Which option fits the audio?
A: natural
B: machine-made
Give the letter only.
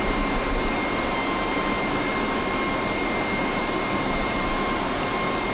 B